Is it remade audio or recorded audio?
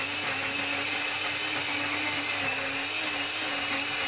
recorded